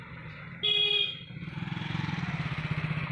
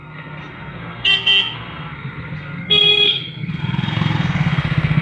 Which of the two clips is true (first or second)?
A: first